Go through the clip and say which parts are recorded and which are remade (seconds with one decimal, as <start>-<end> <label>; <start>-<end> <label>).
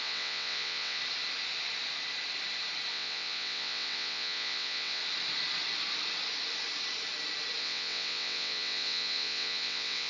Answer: 0.0-1.0 remade; 1.0-2.9 recorded; 2.9-5.0 remade; 5.0-7.6 recorded; 7.6-10.1 remade